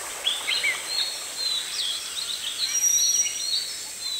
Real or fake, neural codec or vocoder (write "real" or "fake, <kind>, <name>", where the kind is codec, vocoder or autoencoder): real